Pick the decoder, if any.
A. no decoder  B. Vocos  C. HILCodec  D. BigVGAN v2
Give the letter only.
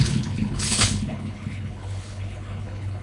C